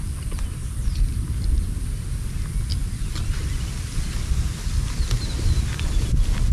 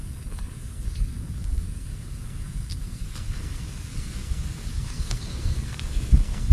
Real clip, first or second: first